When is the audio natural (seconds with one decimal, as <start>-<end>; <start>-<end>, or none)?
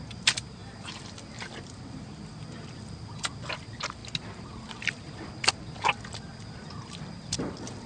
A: 0.0-7.9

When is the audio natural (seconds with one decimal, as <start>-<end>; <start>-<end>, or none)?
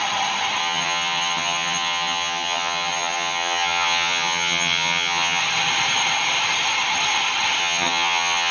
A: 0.0-0.6; 5.4-7.6